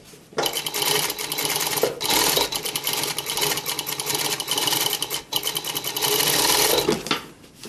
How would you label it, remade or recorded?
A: recorded